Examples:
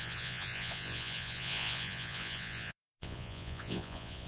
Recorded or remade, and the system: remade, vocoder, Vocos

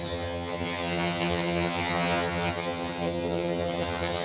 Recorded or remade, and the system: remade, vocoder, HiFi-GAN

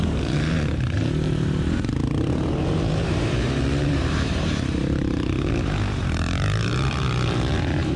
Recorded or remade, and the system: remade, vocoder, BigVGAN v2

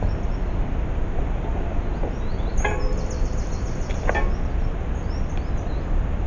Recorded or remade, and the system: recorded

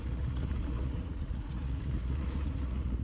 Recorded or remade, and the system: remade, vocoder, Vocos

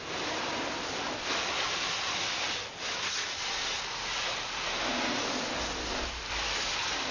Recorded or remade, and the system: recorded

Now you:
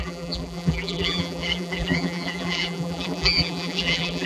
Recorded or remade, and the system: remade, vocoder, BigVGAN v2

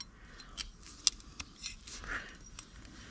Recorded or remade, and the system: recorded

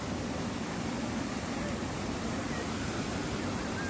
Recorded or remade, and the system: recorded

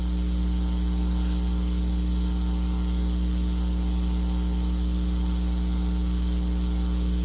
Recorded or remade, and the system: recorded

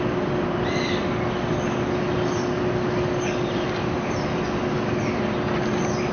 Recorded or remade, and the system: recorded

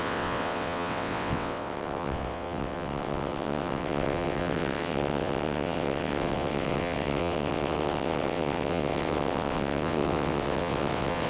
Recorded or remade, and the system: remade, vocoder, WaveNeXt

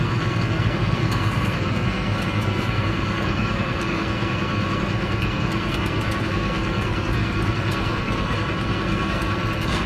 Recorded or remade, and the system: remade, codec, SNAC